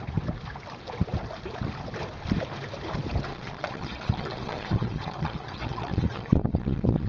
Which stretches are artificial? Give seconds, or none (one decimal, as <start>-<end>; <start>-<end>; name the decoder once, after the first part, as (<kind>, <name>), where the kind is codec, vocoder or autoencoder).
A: 3.3-7.1 (vocoder, Vocos)